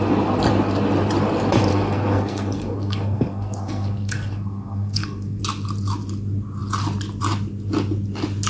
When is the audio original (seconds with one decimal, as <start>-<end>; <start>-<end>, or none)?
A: 0.0-1.7; 5.4-8.5